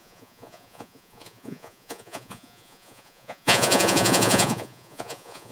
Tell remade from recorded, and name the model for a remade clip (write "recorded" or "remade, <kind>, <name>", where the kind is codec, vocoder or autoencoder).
remade, vocoder, Vocos